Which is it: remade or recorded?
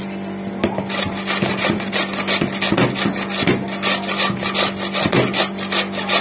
recorded